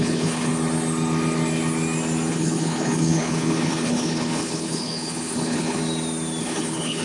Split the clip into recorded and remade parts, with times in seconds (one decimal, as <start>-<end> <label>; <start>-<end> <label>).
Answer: 0.0-0.5 remade; 0.5-2.3 recorded; 2.3-5.8 remade; 5.8-6.4 recorded; 6.4-7.0 remade